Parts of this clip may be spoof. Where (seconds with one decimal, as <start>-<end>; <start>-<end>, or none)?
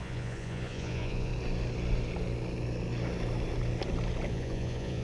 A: 0.0-1.3; 4.3-5.0